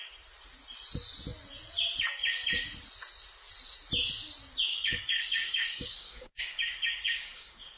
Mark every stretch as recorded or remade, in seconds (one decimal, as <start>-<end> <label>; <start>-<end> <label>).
0.0-4.7 recorded; 4.7-7.8 remade